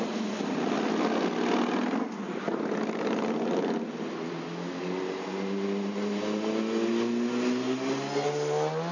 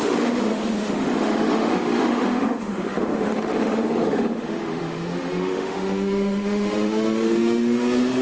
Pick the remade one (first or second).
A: second